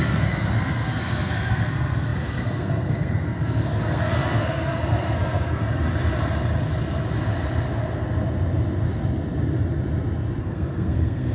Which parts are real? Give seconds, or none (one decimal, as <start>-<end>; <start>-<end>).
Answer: 5.6-10.4